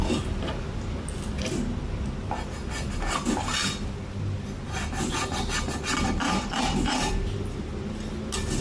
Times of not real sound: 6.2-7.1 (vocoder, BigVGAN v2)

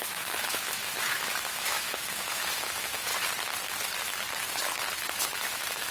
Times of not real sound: 0.0-3.1 (autoencoder, DAC-VAE); 5.1-5.9

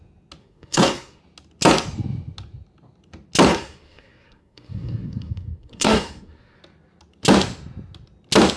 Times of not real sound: 0.4-1.2 (codec, SNAC); 3.5-6.6

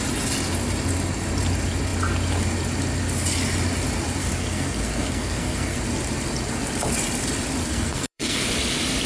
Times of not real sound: 4.2-5.8 (codec, SNAC); 7.6-8.5

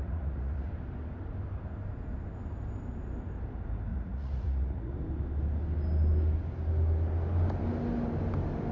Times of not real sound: 0.0-0.7 (vocoder, Vocos); 3.9-4.9

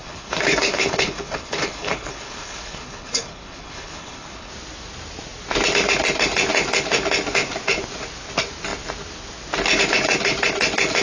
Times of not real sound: 0.0-4.5 (codec, HILCodec)

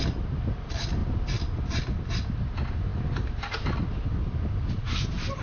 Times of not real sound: none